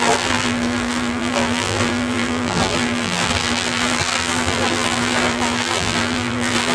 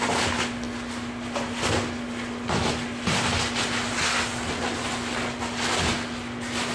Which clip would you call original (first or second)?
second